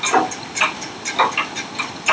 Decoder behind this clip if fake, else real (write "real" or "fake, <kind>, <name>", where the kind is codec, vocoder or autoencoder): real